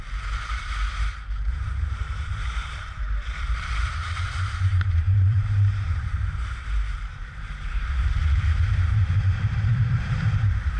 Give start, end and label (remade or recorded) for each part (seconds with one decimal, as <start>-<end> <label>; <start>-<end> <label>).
0.0-10.8 remade